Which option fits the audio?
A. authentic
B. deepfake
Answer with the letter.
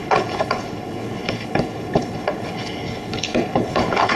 B